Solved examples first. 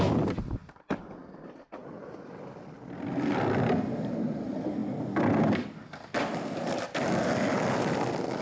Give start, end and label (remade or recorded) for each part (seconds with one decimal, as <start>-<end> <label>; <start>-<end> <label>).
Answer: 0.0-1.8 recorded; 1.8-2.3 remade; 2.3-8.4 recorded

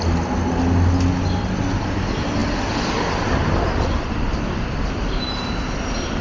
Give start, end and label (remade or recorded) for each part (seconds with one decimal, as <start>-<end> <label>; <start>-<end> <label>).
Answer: 0.0-6.2 recorded

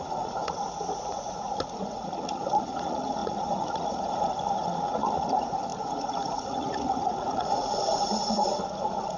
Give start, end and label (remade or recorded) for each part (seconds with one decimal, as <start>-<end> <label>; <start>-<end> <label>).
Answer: 0.0-9.2 remade

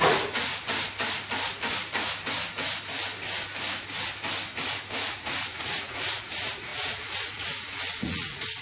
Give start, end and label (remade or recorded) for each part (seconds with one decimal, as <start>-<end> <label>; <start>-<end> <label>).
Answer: 0.0-0.5 remade; 0.5-5.1 recorded; 5.1-8.6 remade

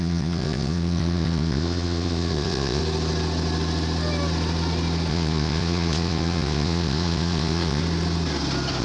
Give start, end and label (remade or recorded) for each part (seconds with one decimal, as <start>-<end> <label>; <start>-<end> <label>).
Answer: 0.0-2.8 remade; 2.8-5.1 recorded; 5.1-7.8 remade; 7.8-8.8 recorded

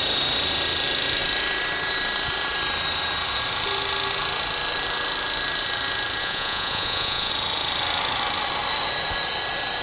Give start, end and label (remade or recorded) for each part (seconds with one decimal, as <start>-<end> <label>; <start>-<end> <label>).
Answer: 0.0-6.2 recorded; 6.2-7.3 remade; 7.3-9.8 recorded

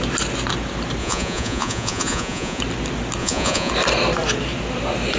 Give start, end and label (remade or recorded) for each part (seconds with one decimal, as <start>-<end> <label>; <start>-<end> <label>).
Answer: 0.0-1.0 recorded; 1.0-2.6 remade; 2.6-3.2 recorded; 3.2-3.7 remade; 3.7-5.2 recorded

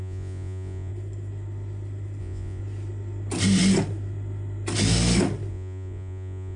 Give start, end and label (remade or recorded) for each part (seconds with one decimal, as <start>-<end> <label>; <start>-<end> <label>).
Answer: 0.0-0.9 remade; 0.9-2.2 recorded; 2.2-2.6 remade; 2.6-5.5 recorded; 5.5-6.6 remade